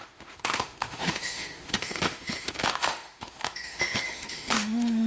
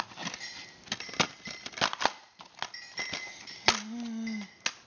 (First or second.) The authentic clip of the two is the second